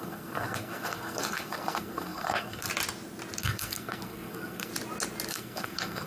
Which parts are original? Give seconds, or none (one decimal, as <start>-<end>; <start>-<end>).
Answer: 2.7-3.4; 4.7-5.3